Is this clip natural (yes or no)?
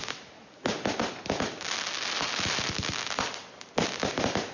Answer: yes